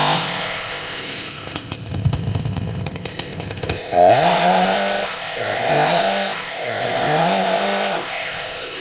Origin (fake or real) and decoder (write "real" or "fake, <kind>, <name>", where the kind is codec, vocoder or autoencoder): fake, codec, ZipCodec